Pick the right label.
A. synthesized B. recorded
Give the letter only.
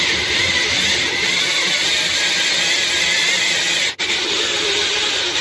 B